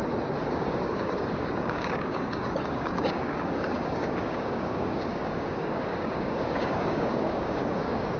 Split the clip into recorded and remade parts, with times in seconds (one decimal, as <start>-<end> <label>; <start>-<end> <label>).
0.0-0.5 recorded; 0.5-8.2 remade